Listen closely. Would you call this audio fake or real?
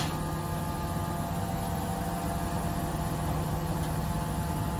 real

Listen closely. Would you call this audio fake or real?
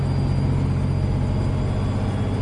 real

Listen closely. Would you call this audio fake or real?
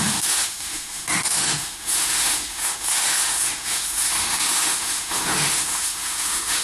fake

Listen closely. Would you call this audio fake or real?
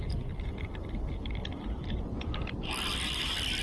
real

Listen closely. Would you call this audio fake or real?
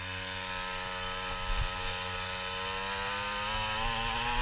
real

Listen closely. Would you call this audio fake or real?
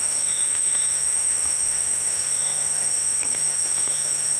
fake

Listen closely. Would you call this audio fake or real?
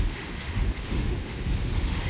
fake